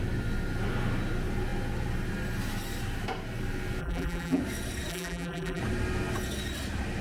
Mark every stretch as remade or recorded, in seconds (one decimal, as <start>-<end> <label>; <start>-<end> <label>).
0.0-3.8 recorded; 3.8-4.4 remade; 4.4-4.9 recorded; 4.9-5.6 remade; 5.6-7.0 recorded